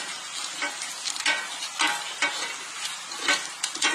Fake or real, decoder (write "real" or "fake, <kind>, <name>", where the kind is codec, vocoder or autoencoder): real